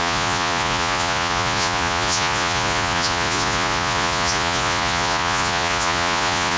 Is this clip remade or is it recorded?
remade